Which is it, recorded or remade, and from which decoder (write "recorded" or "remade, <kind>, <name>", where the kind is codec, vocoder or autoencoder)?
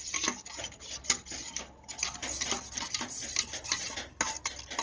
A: recorded